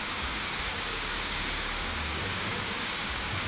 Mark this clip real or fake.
fake